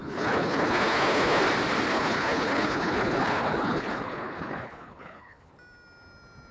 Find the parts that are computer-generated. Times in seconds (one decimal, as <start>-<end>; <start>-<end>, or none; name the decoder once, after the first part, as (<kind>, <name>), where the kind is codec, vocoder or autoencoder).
0.0-1.4 (codec, HILCodec); 1.9-5.5